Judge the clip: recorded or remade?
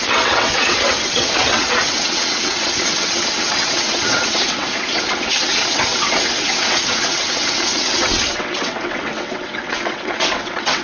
remade